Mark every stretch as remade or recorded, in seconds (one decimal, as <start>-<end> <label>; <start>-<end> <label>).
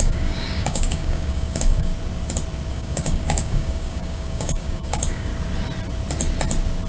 0.0-1.9 remade; 1.9-2.7 recorded; 2.7-5.3 remade; 5.3-6.9 recorded